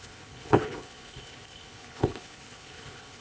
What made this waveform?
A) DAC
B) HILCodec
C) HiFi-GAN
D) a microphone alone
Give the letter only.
B